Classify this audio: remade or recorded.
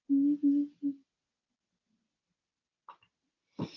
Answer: recorded